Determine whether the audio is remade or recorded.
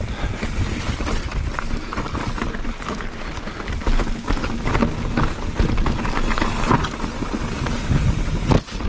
recorded